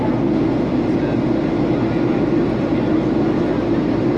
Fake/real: real